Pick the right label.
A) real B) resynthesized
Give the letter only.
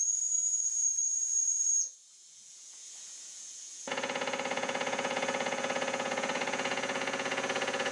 B